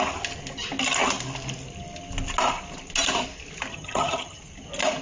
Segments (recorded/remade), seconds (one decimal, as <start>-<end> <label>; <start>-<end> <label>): 0.0-3.7 recorded; 3.7-4.4 remade; 4.4-5.0 recorded